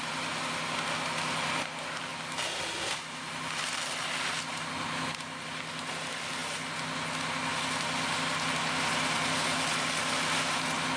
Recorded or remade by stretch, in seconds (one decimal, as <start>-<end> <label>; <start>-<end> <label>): 0.0-11.0 recorded